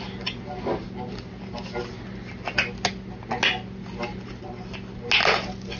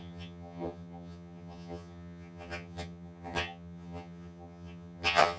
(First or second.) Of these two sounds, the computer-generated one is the second